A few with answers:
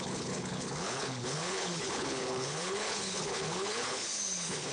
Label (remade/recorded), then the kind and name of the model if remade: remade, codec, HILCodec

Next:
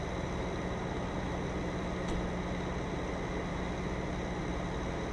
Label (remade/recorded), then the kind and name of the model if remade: recorded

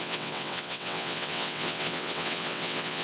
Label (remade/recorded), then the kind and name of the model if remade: remade, vocoder, WaveNeXt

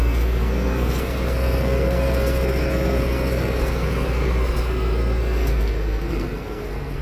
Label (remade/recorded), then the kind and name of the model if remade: remade, codec, SNAC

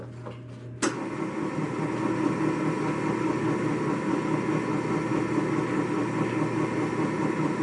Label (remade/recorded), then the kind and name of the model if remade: recorded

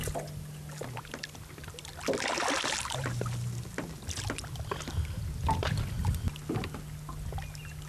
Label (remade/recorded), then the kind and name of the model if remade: recorded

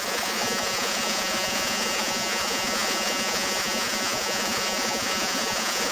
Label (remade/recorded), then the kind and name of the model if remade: remade, vocoder, Vocos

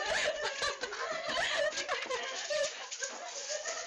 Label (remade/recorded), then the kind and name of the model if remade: remade, vocoder, Vocos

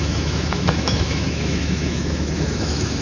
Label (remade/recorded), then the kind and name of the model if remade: remade, autoencoder, DAC-VAE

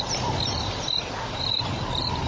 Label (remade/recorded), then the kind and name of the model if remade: recorded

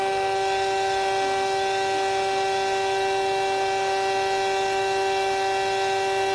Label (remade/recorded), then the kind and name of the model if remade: recorded